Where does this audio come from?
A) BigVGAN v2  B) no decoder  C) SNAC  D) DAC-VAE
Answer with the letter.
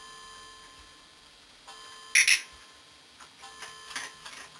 B